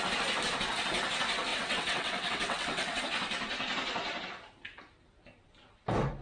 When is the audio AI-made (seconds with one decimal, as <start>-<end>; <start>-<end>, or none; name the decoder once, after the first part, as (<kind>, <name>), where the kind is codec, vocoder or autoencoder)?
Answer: 1.5-3.0 (vocoder, WaveNeXt)